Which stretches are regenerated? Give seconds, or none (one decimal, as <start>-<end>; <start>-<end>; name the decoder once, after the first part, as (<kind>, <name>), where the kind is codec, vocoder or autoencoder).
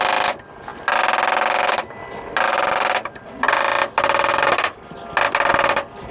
none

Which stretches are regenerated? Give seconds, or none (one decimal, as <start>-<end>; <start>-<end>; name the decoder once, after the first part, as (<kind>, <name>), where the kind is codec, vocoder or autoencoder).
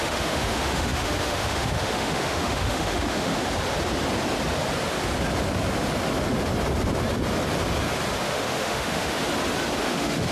0.0-3.3 (autoencoder, DAC-VAE); 8.2-9.2; 9.8-10.3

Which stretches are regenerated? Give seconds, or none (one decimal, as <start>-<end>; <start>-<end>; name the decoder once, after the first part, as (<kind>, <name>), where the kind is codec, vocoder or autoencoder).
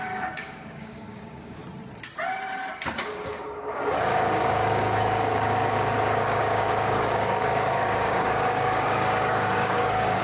0.0-1.6 (codec, DAC); 3.0-10.2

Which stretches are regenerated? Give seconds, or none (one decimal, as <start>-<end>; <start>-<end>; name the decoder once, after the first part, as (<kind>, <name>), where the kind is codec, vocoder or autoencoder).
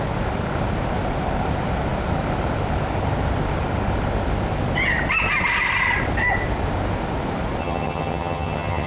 7.6-8.9 (vocoder, HiFi-GAN)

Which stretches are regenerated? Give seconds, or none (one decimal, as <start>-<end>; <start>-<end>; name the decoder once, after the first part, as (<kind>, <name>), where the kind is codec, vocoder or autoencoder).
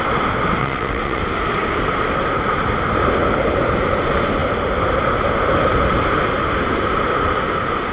0.6-1.2 (vocoder, WaveNeXt)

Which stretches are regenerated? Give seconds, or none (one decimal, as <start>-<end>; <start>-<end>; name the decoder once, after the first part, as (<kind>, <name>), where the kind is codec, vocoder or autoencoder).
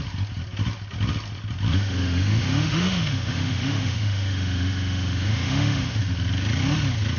1.7-6.0 (autoencoder, DAC-VAE)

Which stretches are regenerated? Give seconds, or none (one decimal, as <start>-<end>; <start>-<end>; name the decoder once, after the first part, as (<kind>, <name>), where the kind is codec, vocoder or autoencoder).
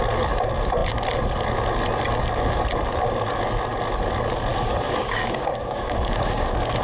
4.5-6.8 (codec, DAC)